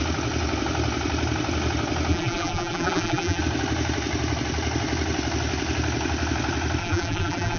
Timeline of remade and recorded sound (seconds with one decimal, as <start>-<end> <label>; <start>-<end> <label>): 0.0-2.1 recorded; 2.1-3.4 remade; 3.4-6.8 recorded; 6.8-7.6 remade